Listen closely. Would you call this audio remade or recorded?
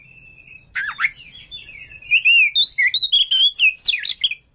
recorded